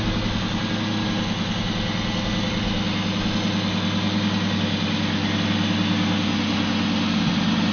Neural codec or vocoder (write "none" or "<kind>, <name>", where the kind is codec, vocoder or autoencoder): none